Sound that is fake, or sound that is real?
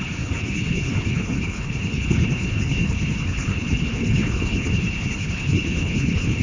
fake